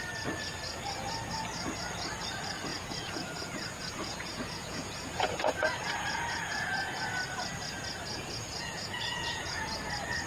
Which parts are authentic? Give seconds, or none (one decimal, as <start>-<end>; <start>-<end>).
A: 0.0-2.7; 7.1-8.1; 9.9-10.3